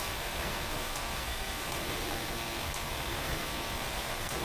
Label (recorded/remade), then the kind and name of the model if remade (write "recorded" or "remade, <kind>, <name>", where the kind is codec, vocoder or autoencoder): remade, codec, SNAC